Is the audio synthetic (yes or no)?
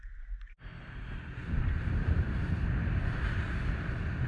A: no